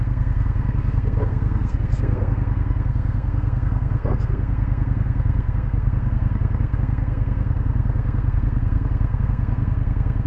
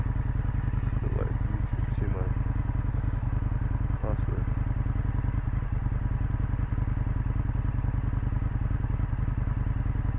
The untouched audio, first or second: second